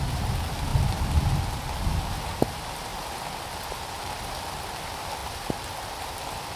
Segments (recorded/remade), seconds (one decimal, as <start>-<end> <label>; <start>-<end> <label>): 0.0-0.7 recorded; 0.7-1.4 remade; 1.4-5.2 recorded; 5.2-6.0 remade; 6.0-6.6 recorded